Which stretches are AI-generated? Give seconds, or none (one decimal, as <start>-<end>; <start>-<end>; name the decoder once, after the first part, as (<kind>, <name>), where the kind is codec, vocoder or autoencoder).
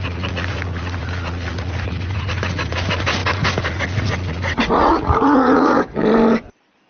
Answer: 0.0-6.0 (vocoder, Vocos)